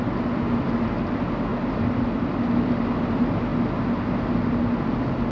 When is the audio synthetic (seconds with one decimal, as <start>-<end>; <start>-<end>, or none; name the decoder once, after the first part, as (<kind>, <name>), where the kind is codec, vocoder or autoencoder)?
none